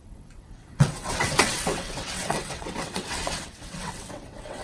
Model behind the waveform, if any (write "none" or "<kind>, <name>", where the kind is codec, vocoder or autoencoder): vocoder, WaveNeXt